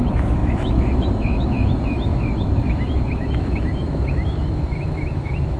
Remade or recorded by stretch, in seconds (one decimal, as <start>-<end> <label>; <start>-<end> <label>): 0.0-5.6 remade